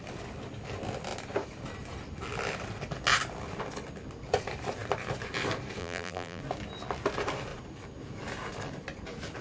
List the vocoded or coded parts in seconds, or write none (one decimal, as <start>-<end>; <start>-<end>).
5.8-6.4